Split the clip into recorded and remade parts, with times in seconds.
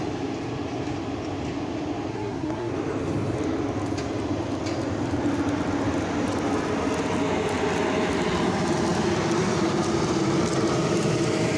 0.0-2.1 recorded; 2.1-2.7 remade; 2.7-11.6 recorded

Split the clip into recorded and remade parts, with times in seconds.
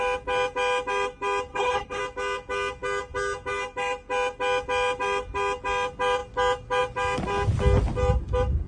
0.0-1.5 recorded; 1.5-2.0 remade; 2.0-8.7 recorded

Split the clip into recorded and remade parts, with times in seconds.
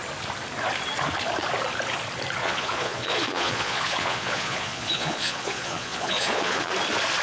0.0-2.4 recorded; 2.4-6.7 remade; 6.7-7.2 recorded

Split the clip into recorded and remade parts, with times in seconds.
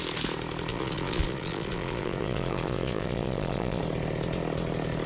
0.0-0.7 recorded; 0.7-3.8 remade; 3.8-5.1 recorded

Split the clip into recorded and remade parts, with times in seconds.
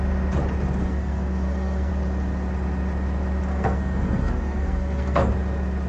0.0-0.8 recorded; 0.8-1.9 remade; 1.9-3.5 recorded; 3.5-5.3 remade; 5.3-5.9 recorded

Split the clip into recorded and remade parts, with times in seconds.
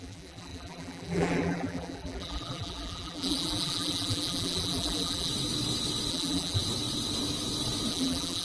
0.0-5.3 remade; 5.3-6.1 recorded; 6.1-6.6 remade; 6.6-7.9 recorded; 7.9-8.4 remade